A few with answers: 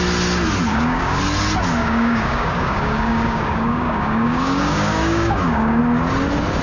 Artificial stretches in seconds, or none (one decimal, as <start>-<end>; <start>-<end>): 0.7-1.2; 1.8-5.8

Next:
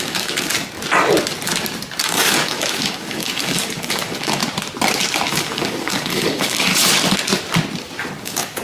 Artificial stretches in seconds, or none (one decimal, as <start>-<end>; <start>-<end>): 0.0-0.5; 2.0-4.4; 5.3-6.7; 8.2-8.6

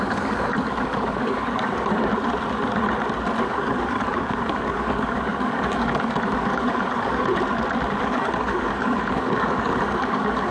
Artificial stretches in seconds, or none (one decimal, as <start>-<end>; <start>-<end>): 0.0-2.1; 3.4-7.3; 8.0-10.5

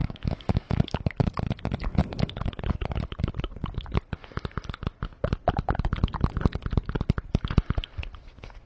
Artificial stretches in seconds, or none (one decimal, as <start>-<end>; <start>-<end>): 0.0-1.1; 2.0-2.6

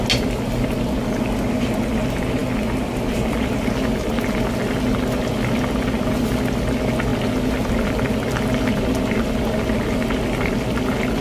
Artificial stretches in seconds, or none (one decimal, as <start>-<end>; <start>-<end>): none

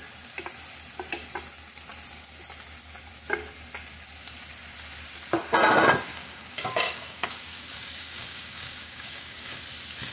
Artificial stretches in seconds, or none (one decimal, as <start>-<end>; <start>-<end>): 6.1-9.6

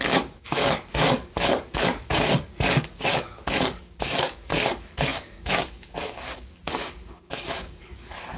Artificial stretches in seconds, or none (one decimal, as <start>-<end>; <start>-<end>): 0.0-8.4